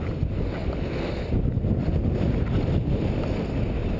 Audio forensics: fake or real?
real